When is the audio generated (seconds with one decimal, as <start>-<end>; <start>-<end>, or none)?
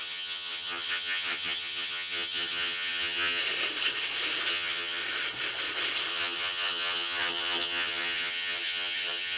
0.0-3.4; 4.5-5.0; 6.1-9.4